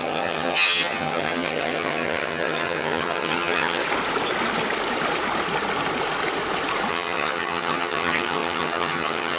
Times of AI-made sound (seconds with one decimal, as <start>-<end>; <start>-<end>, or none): 0.0-3.8; 6.9-9.4